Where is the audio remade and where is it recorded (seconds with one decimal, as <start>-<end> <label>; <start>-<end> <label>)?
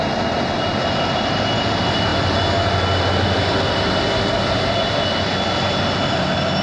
0.0-6.6 recorded